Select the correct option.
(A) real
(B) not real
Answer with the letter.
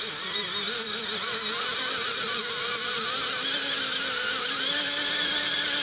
A